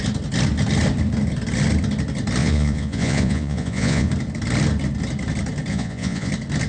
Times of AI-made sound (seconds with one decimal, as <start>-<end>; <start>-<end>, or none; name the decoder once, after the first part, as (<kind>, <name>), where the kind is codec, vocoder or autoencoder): 2.4-4.1 (vocoder, Vocos); 5.7-6.3

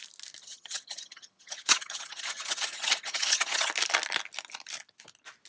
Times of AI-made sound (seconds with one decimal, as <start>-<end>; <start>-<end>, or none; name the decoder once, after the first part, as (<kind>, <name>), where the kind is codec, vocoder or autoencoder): 0.4-3.7 (vocoder, HiFi-GAN)

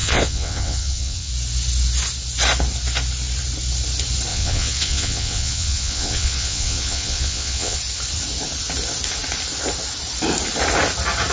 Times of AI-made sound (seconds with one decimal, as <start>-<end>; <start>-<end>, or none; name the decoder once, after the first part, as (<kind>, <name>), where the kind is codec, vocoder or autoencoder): 0.0-1.3 (vocoder, WaveNeXt); 4.3-7.8